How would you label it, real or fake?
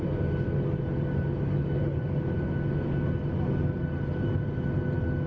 real